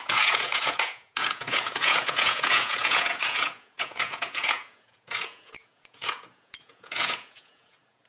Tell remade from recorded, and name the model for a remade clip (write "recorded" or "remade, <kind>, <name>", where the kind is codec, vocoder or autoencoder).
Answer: remade, vocoder, Vocos